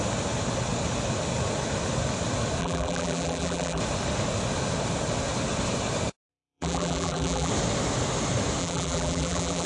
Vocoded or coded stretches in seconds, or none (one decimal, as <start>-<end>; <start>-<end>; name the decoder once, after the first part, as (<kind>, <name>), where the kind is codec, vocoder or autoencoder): 2.6-3.8 (vocoder, BigVGAN v2); 6.3-7.5; 8.6-9.7

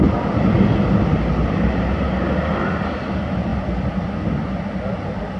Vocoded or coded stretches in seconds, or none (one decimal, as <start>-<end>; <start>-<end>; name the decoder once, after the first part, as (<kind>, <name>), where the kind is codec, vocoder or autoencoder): 1.4-2.2 (vocoder, BigVGAN v2)

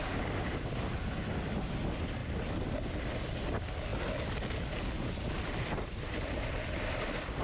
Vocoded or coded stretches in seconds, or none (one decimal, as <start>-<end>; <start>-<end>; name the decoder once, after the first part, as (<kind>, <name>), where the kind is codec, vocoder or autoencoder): 0.0-3.9 (vocoder, BigVGAN v2); 5.3-7.4

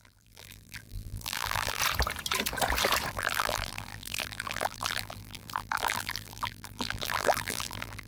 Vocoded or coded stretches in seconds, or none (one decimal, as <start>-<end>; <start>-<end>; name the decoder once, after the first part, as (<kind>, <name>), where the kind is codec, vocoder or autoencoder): 0.0-1.8 (vocoder, BigVGAN v2); 3.1-8.1

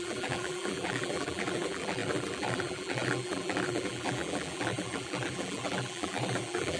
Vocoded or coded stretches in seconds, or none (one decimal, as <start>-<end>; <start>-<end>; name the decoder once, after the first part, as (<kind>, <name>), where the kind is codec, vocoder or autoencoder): 0.0-6.8 (vocoder, BigVGAN v2)

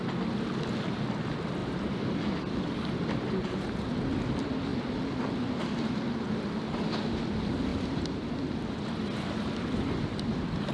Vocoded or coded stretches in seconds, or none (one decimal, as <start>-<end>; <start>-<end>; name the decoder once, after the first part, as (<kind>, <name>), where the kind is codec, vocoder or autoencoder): none

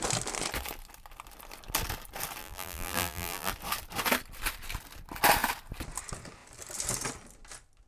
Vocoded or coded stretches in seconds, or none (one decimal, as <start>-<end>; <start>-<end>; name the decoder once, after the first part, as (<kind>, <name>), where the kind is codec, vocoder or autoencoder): 2.4-3.5 (vocoder, BigVGAN v2)

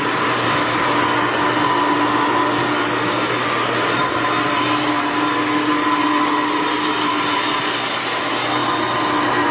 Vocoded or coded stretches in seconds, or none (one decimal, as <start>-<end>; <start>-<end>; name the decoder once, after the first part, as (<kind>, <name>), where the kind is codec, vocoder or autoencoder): none